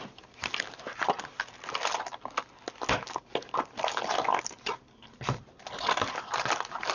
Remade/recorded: recorded